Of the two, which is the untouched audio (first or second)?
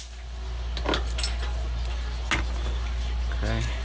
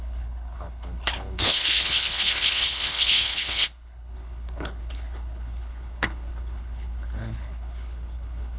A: first